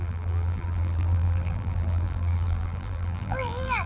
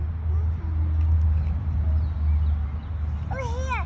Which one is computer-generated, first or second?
first